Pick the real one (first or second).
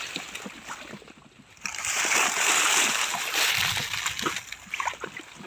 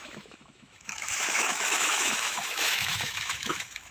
first